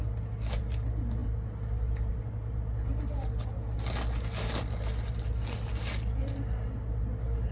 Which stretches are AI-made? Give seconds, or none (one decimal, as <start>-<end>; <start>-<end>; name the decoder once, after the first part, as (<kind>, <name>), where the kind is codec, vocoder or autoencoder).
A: none